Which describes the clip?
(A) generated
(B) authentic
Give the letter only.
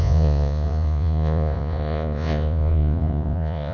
A